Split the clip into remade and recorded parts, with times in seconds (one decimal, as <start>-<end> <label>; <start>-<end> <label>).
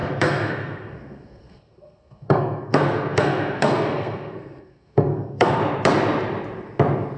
0.0-5.6 remade; 5.6-7.2 recorded